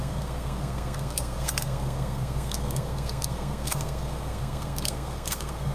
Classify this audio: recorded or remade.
remade